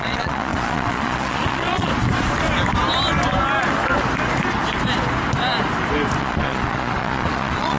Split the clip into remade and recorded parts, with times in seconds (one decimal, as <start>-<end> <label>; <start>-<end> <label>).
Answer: 0.0-1.9 remade; 1.9-6.2 recorded; 6.2-7.8 remade